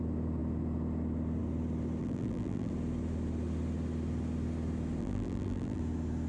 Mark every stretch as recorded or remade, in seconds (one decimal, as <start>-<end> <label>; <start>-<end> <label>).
0.0-2.0 recorded; 2.0-2.7 remade; 2.7-5.0 recorded; 5.0-5.8 remade; 5.8-6.3 recorded